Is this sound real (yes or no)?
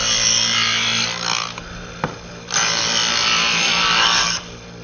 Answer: yes